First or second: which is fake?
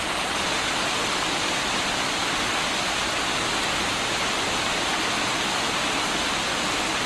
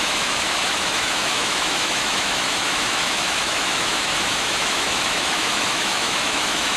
second